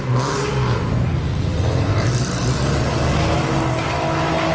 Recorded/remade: recorded